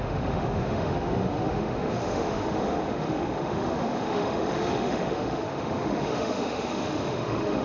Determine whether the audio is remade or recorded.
remade